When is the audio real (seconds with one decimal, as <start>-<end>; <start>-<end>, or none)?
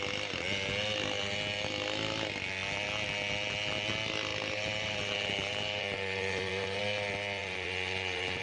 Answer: 0.0-4.3; 6.8-7.4